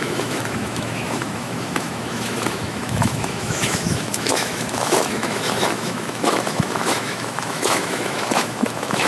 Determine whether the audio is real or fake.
fake